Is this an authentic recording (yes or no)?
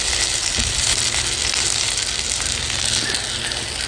yes